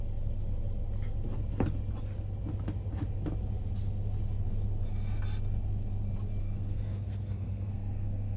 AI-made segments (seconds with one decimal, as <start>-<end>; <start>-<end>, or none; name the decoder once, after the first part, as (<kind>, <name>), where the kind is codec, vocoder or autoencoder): 6.4-8.4 (codec, SNAC)